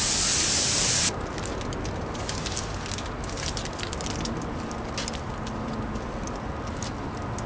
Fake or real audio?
real